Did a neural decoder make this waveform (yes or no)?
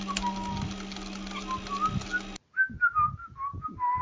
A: no